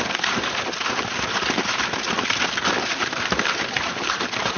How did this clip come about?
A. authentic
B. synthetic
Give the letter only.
A